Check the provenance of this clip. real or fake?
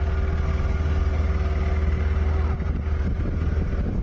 real